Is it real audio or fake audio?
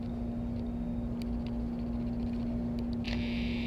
real